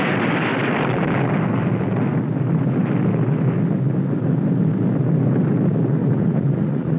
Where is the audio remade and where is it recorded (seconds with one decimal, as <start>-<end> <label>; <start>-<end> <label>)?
0.0-6.0 recorded; 6.0-7.0 remade